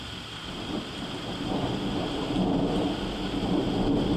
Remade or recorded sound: recorded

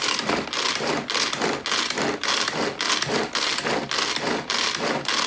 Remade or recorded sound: recorded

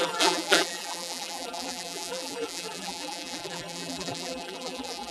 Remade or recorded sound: remade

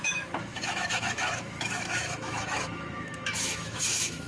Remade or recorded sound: remade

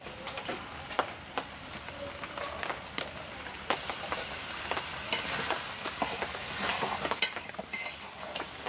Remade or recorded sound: recorded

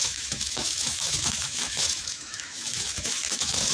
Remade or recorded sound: remade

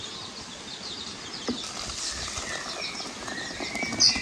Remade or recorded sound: recorded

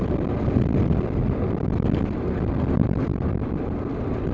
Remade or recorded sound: recorded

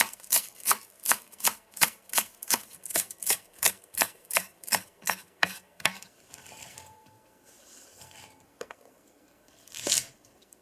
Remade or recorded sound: remade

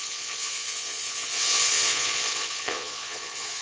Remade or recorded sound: remade